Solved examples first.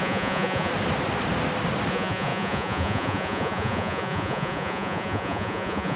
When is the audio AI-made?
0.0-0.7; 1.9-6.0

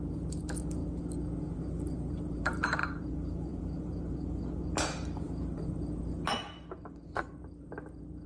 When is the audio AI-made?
0.0-0.8; 1.4-8.3